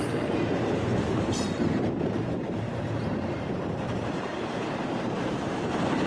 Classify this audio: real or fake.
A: fake